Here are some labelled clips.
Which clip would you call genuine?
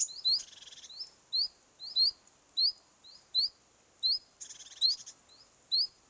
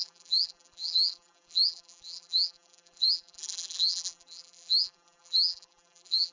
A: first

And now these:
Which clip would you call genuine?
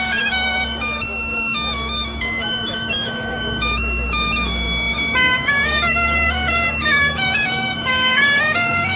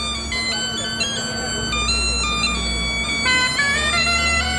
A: second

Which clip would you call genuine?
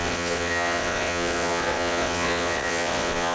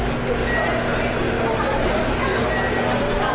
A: second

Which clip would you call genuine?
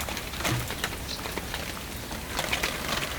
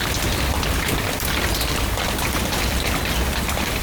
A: first